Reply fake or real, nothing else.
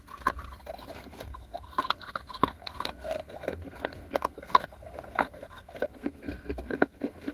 fake